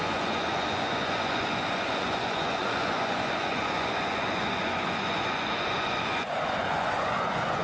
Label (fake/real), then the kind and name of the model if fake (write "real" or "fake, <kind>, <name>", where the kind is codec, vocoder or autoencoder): fake, vocoder, Vocos